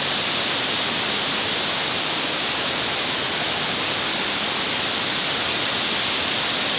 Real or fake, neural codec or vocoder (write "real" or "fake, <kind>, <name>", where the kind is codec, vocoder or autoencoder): real